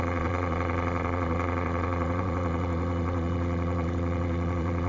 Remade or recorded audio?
remade